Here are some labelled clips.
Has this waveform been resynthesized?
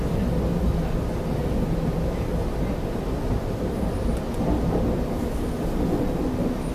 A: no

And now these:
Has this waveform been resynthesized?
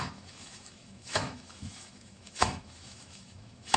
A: yes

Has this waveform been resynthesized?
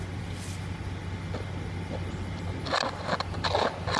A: no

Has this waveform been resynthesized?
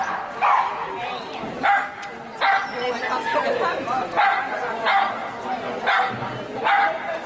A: no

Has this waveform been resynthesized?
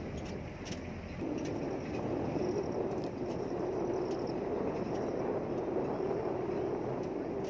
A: no